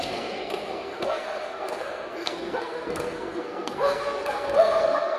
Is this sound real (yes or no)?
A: no